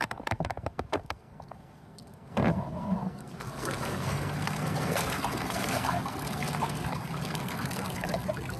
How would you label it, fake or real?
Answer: fake